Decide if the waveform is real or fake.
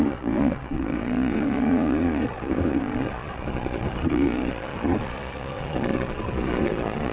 fake